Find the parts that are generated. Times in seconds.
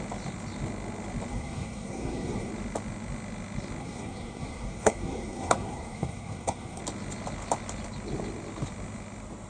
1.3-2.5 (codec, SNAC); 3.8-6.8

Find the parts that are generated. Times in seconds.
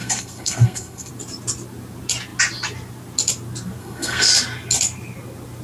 0.0-1.1 (codec, SNAC); 3.8-4.3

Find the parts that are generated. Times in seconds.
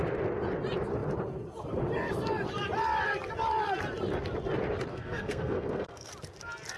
4.9-6.1 (codec, SNAC)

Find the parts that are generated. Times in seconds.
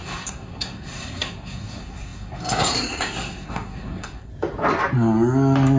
0.0-4.3 (codec, SNAC)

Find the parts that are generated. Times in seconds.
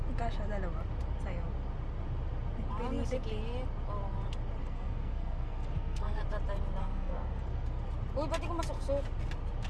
4.6-6.2 (codec, SNAC); 6.8-7.8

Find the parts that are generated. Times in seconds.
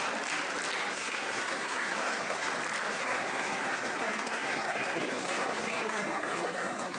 0.9-2.5 (codec, SNAC); 2.9-7.0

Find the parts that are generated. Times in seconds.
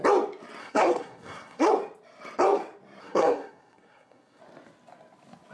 0.6-1.7 (codec, SNAC); 3.0-4.4